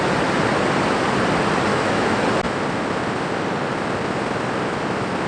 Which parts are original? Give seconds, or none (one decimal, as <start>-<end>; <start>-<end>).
0.0-1.7; 2.2-5.3